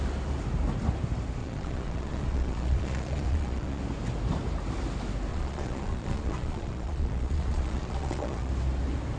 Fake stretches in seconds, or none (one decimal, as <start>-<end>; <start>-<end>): 1.4-3.8; 5.3-8.5